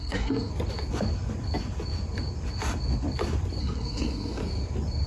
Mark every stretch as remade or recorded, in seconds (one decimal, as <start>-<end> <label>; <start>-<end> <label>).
0.0-0.5 remade; 0.5-3.6 recorded; 3.6-4.4 remade; 4.4-5.1 recorded